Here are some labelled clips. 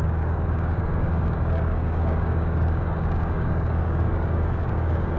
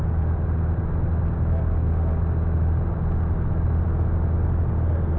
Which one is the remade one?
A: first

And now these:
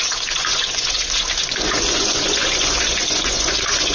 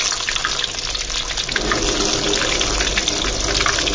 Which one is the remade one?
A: first